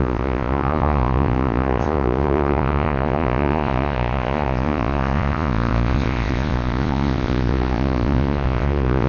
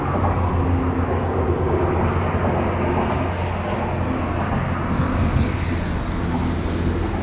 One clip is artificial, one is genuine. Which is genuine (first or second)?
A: second